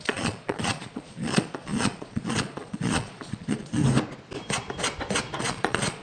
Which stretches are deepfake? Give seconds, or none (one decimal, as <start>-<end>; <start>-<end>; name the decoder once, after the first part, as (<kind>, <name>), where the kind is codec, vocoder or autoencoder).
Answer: 0.0-3.8 (vocoder, Vocos); 5.4-6.0